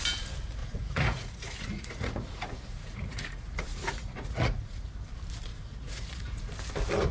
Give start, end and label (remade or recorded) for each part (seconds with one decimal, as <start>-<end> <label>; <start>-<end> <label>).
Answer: 0.0-0.6 recorded; 0.6-4.9 remade; 4.9-5.5 recorded; 5.5-6.5 remade; 6.5-7.1 recorded